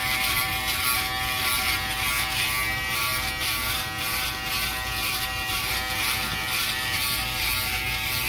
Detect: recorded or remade recorded